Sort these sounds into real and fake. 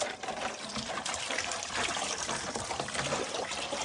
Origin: fake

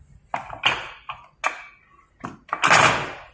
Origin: real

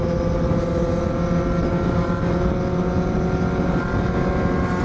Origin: real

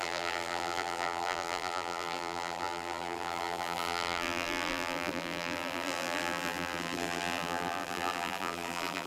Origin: fake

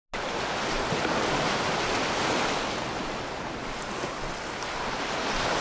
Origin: real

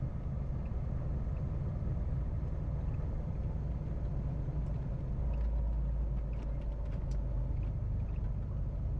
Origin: real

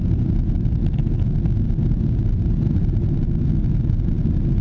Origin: real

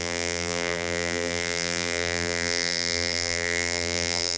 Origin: fake